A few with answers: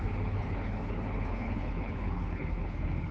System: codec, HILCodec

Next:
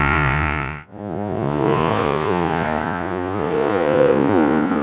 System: vocoder, Vocos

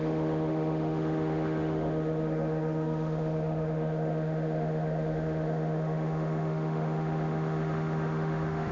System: autoencoder, DAC-VAE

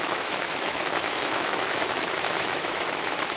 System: autoencoder, DAC-VAE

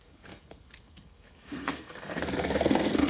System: codec, SNAC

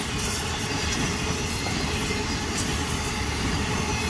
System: none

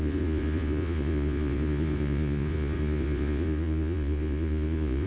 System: vocoder, Vocos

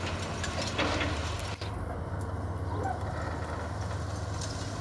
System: none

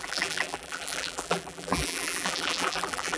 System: vocoder, BigVGAN v2